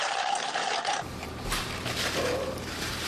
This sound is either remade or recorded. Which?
remade